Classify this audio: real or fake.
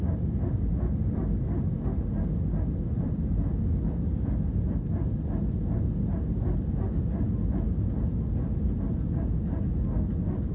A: real